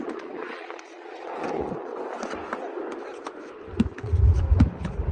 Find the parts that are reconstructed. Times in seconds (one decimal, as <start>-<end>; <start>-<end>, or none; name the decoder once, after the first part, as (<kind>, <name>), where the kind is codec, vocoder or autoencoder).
0.0-1.9 (vocoder, Vocos)